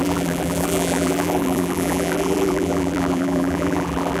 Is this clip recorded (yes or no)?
no